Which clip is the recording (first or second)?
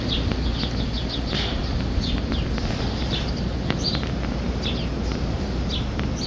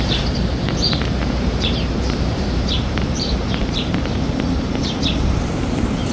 first